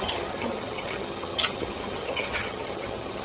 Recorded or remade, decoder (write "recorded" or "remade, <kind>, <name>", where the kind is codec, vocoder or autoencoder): remade, vocoder, HiFi-GAN